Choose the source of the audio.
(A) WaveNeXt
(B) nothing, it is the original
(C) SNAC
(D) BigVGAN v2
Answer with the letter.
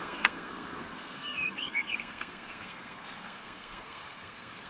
C